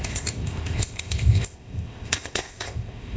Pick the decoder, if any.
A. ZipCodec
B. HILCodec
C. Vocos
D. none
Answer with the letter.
A